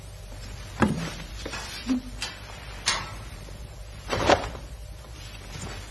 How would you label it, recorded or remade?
remade